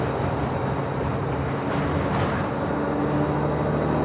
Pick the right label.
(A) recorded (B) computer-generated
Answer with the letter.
A